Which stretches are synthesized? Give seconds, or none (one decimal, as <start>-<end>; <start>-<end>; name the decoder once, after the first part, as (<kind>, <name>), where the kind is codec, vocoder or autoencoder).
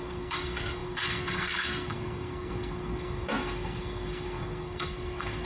0.0-5.5 (codec, SNAC)